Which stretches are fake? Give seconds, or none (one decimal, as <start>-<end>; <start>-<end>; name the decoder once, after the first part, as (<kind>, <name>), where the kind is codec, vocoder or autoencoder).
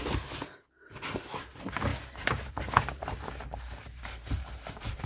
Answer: 1.9-5.1 (vocoder, BigVGAN v2)